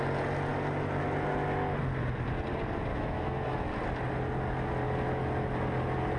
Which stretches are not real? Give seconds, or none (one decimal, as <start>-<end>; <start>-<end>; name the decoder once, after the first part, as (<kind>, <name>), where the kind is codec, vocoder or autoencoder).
2.9-3.7 (autoencoder, DAC-VAE)